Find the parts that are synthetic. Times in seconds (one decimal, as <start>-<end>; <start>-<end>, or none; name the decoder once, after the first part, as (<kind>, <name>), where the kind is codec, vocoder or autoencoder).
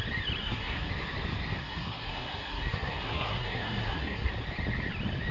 0.4-0.9 (codec, SNAC); 1.6-4.3